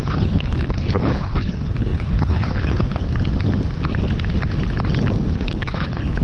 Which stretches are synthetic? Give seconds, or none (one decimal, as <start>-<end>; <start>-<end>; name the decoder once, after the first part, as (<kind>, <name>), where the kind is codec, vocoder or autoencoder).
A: 0.0-3.0 (codec, HILCodec); 5.3-6.2